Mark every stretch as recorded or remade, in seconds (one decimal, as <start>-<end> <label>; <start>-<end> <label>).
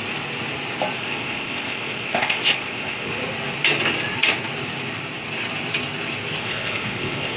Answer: 0.0-1.0 recorded; 1.0-3.1 remade; 3.1-6.4 recorded; 6.4-7.4 remade